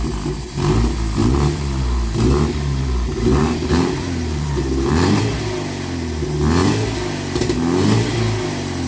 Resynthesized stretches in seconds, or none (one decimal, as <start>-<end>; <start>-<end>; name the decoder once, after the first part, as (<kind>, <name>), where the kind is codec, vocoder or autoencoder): 1.2-5.2 (vocoder, BigVGAN v2)